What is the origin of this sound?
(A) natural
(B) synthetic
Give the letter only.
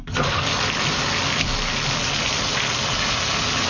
A